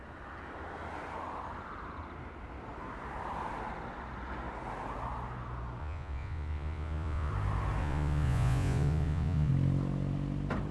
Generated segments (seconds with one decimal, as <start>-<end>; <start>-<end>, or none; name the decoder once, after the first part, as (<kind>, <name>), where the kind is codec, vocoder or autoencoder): 5.8-7.3 (vocoder, Vocos); 7.8-9.5